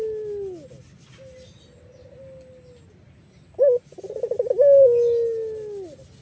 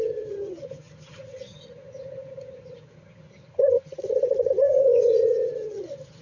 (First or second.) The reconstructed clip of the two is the second